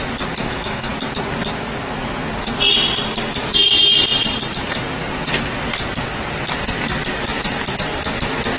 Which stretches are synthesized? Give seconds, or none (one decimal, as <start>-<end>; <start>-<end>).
0.4-0.9